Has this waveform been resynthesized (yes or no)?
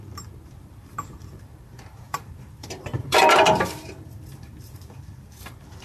yes